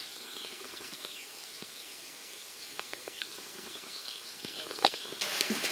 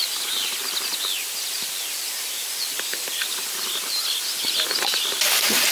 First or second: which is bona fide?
second